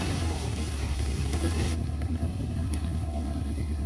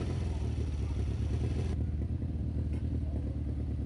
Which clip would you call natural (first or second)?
second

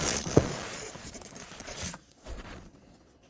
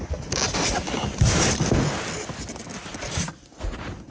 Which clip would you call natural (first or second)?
second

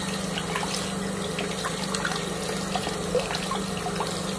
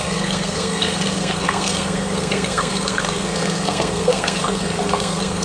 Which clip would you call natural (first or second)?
first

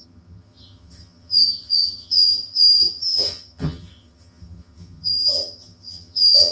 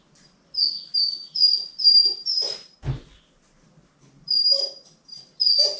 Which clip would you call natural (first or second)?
second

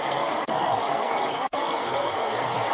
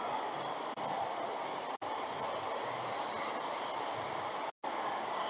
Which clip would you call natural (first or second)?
second